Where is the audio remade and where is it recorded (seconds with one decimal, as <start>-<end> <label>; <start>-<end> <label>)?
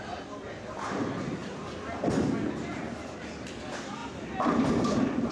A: 0.0-5.3 recorded